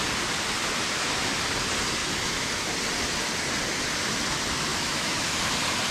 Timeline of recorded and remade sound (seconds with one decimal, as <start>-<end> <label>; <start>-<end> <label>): 0.0-2.0 recorded; 2.0-2.7 remade; 2.7-4.7 recorded; 4.7-5.4 remade; 5.4-5.9 recorded